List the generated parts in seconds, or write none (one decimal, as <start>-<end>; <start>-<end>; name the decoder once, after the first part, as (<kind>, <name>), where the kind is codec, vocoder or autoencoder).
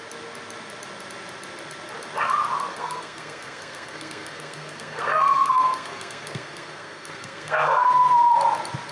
2.7-7.9 (codec, SNAC)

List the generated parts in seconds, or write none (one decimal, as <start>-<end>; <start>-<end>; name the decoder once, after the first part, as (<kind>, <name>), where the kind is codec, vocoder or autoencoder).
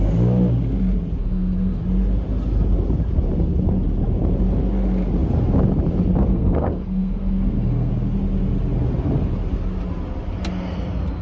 1.2-1.8 (codec, SNAC); 6.3-7.9